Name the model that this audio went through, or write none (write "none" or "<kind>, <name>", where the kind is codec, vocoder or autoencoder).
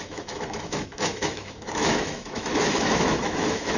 autoencoder, DAC-VAE